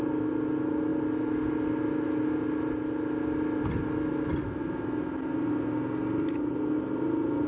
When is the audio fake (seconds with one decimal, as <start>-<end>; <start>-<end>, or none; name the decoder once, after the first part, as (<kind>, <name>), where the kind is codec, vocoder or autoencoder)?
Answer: none